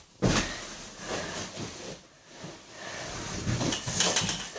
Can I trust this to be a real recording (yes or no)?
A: yes